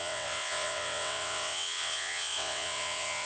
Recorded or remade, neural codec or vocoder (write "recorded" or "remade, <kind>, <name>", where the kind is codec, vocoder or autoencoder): remade, vocoder, WaveNeXt